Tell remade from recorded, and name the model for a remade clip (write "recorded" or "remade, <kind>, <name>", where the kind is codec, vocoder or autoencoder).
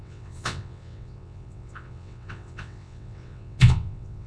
remade, vocoder, WaveNeXt